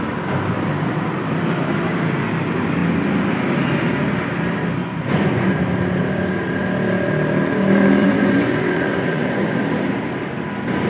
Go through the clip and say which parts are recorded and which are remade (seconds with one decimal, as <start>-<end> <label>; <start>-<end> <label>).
0.0-4.8 recorded; 4.8-5.6 remade; 5.6-8.0 recorded; 8.0-9.6 remade; 9.6-10.9 recorded